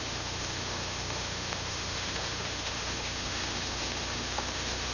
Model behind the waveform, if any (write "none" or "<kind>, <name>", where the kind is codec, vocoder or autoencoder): autoencoder, DAC-VAE